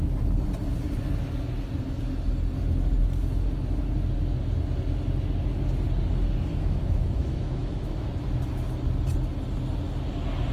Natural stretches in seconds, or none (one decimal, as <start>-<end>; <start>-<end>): 0.0-6.5; 8.1-10.5